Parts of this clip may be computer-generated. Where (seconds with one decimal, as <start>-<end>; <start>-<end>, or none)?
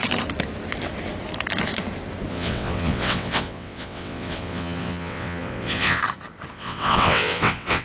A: 2.3-6.0; 6.5-7.8